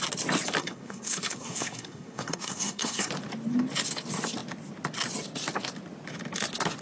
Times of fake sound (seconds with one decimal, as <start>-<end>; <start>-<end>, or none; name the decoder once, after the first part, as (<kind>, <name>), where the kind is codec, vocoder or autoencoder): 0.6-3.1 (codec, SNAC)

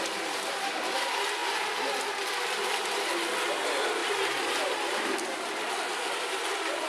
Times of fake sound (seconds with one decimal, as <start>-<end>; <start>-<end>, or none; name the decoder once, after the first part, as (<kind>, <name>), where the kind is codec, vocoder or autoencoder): 0.0-1.4 (vocoder, BigVGAN v2); 2.1-4.0

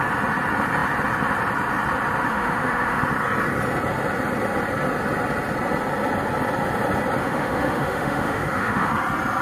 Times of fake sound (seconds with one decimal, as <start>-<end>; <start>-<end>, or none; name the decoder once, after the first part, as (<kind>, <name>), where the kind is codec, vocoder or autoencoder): 2.3-3.0 (autoencoder, DAC-VAE); 7.2-8.9

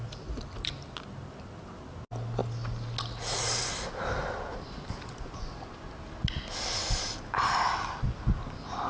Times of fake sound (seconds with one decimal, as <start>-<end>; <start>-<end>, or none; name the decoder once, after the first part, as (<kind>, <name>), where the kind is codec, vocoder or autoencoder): none

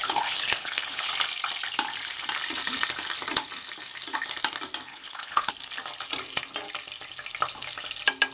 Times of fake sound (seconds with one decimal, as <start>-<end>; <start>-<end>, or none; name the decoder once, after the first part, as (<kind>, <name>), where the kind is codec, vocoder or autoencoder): 0.0-1.1 (codec, HILCodec); 4.9-5.5